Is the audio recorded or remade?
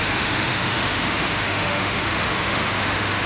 remade